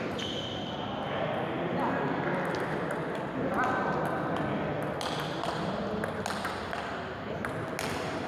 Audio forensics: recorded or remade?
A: recorded